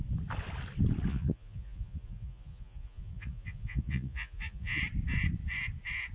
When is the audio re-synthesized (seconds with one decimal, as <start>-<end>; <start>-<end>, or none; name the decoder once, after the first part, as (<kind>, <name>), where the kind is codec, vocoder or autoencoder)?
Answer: 1.1-4.8 (vocoder, Vocos)